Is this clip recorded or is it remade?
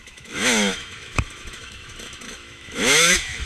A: remade